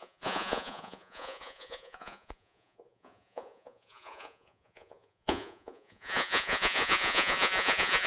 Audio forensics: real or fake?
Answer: fake